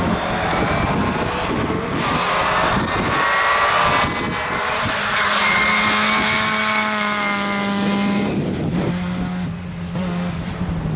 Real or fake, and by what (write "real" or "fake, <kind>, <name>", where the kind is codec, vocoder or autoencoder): real